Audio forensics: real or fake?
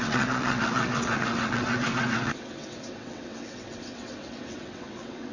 fake